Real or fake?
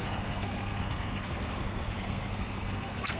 fake